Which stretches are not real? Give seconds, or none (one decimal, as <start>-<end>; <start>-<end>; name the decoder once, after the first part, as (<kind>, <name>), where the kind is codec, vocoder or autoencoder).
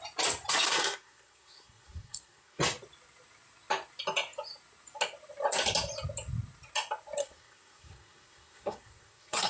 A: 0.7-2.6 (codec, SNAC); 7.2-9.5